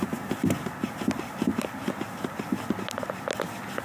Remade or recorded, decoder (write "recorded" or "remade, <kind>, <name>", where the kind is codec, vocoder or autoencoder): recorded